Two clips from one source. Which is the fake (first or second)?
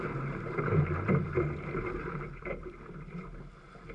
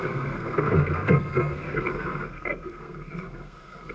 second